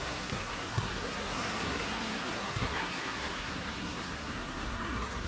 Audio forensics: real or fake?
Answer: fake